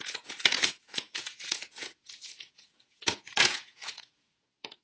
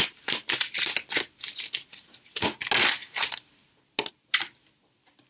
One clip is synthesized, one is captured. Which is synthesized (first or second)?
first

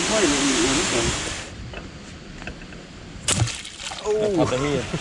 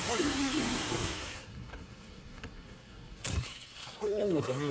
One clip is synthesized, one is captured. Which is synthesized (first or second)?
second